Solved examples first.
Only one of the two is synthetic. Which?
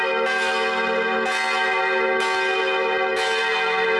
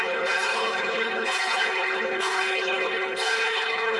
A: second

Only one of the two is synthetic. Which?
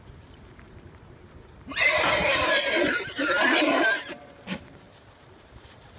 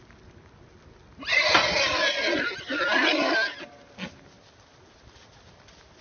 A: first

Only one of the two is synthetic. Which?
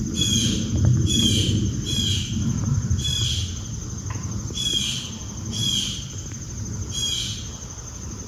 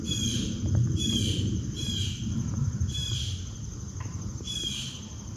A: second